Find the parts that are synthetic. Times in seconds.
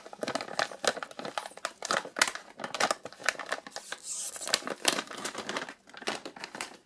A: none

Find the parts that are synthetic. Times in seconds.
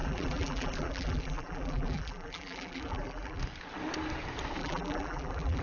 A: 0.0-3.4 (vocoder, BigVGAN v2); 4.6-5.6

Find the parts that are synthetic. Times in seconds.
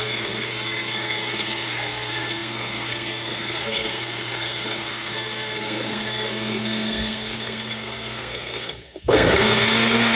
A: 0.0-10.1 (codec, SNAC)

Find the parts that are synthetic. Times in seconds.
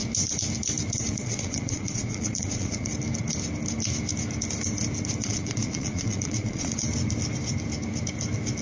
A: 1.1-2.9 (vocoder, Vocos); 5.2-6.8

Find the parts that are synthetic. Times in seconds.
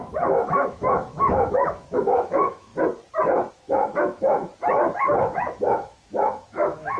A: 0.0-2.7 (autoencoder, DAC-VAE); 3.5-4.5; 5.2-7.0